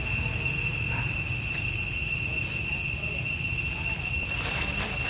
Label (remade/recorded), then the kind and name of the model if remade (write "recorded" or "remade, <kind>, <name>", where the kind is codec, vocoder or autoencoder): remade, vocoder, BigVGAN v2